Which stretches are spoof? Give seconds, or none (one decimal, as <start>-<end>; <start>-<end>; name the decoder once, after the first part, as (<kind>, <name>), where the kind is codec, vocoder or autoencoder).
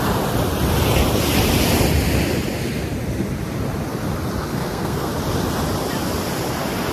4.5-5.1 (codec, SNAC)